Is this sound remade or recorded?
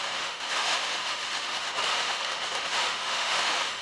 remade